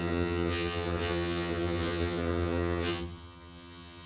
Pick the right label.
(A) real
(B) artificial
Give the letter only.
B